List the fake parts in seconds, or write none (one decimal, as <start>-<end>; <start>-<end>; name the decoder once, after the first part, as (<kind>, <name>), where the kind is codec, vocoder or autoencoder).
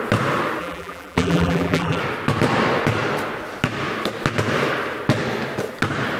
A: 0.6-2.0 (vocoder, BigVGAN v2)